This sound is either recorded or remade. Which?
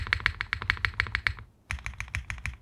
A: recorded